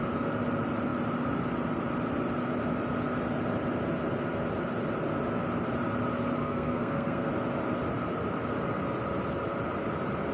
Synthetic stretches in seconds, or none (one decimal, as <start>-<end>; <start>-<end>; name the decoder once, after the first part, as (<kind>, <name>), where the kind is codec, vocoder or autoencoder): 6.4-7.3 (codec, SNAC)

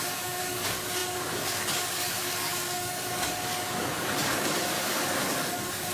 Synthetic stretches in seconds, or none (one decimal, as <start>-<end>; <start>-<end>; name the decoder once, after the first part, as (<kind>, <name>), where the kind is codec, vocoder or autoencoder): 0.0-5.9 (codec, DAC)

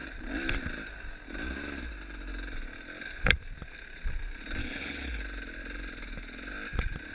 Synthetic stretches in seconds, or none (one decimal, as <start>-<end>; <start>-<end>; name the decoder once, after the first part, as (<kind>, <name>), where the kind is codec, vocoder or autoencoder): 4.6-5.2 (codec, HILCodec)

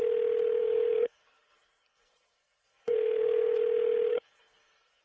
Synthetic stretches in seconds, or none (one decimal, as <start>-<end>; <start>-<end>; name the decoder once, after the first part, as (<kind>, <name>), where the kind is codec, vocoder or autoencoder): 0.6-3.6 (codec, SNAC); 4.1-5.0

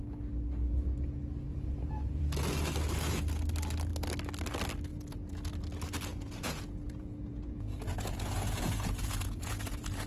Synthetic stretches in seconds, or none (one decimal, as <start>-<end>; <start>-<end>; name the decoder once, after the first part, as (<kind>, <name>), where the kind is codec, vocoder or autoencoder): 1.5-2.2 (vocoder, Vocos); 4.9-5.5; 6.1-10.1